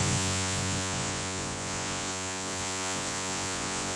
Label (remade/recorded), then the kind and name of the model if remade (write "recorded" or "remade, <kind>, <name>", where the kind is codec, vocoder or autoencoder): remade, vocoder, Vocos